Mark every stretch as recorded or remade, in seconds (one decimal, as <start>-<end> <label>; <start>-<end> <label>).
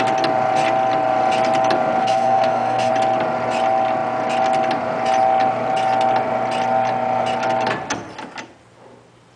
0.0-2.0 recorded; 2.0-2.9 remade; 2.9-9.4 recorded